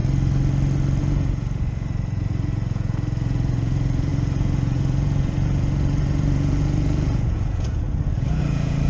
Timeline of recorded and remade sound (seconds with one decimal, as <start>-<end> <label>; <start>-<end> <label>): 0.0-1.0 recorded; 1.0-8.9 remade